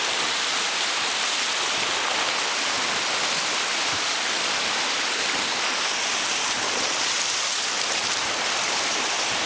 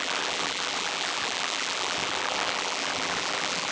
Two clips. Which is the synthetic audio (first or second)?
second